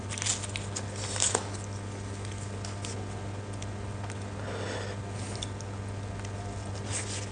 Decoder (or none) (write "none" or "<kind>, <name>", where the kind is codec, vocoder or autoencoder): none